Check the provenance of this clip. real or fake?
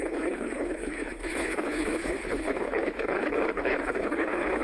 fake